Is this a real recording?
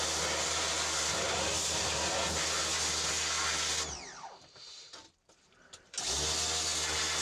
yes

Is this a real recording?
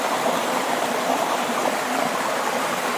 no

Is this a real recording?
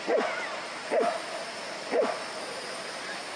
yes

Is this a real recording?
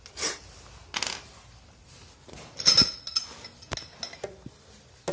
yes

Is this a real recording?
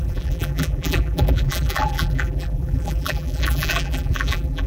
no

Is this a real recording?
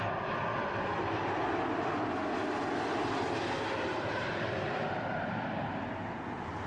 yes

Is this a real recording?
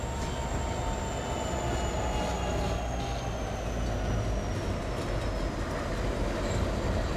yes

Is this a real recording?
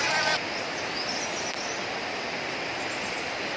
yes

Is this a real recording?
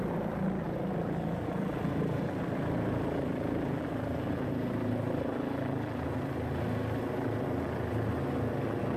yes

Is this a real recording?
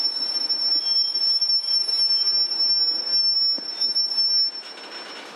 yes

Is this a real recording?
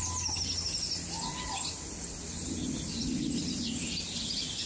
yes